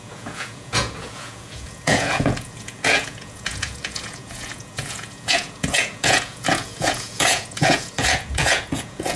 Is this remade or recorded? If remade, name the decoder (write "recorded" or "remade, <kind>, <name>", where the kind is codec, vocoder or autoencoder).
remade, vocoder, Vocos